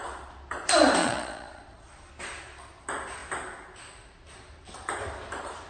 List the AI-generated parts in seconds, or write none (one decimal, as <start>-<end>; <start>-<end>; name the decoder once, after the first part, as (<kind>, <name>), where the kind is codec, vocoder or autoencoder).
1.0-2.1 (vocoder, Vocos)